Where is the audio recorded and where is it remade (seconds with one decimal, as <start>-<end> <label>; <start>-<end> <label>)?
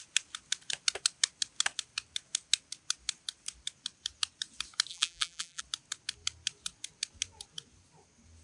0.0-4.9 recorded; 4.9-5.6 remade; 5.6-8.4 recorded